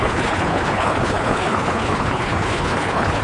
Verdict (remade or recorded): remade